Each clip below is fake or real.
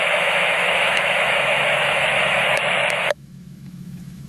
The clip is fake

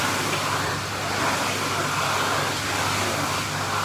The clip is real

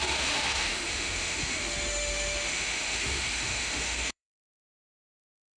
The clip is fake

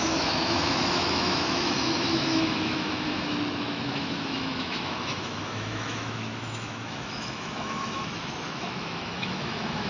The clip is fake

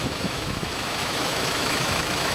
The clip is fake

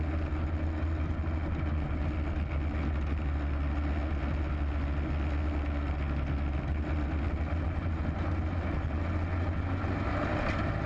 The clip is real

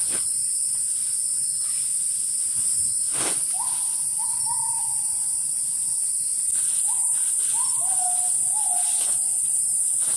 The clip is real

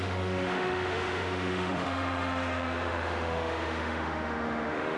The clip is fake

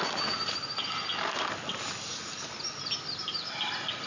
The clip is real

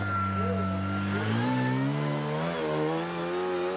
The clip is real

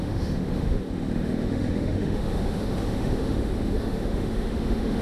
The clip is fake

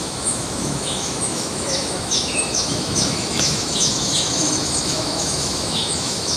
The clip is fake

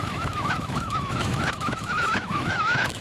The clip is fake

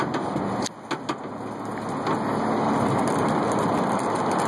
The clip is real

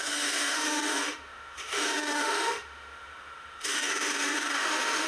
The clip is fake